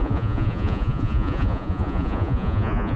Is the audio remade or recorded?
remade